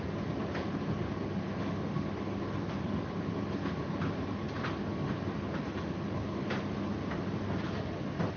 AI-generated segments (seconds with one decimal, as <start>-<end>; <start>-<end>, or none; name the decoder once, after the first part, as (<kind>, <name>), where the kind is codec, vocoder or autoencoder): none

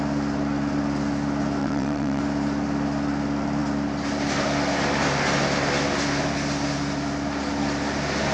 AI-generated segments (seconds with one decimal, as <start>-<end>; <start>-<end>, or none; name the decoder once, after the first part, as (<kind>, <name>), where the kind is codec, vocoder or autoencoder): 1.6-2.2 (vocoder, WaveNeXt)